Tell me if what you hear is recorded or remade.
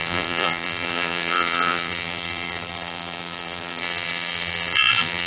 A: remade